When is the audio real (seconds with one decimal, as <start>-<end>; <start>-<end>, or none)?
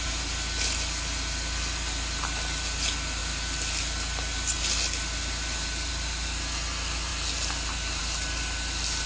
0.0-9.1